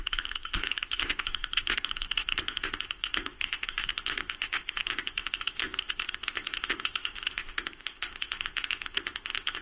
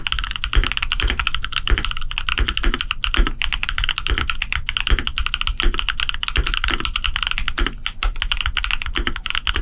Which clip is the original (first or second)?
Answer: second